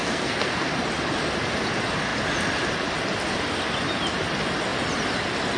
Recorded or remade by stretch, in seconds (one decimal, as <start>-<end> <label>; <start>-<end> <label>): 0.0-0.7 remade; 0.7-5.6 recorded